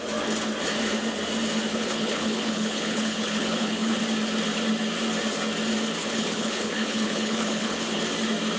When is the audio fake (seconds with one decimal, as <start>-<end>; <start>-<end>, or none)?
1.7-4.0; 6.0-8.0